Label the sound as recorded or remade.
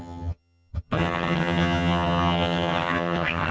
remade